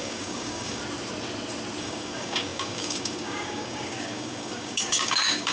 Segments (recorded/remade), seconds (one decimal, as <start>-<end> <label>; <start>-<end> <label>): 0.0-0.8 remade; 0.8-1.8 recorded; 1.8-5.5 remade